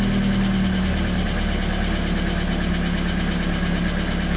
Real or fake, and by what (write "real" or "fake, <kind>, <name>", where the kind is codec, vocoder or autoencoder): real